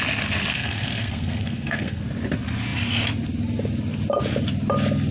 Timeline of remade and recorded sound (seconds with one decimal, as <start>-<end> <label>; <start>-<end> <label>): 0.0-0.5 recorded; 0.5-2.0 remade; 2.0-5.1 recorded